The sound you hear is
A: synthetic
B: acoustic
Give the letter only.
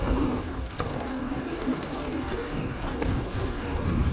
A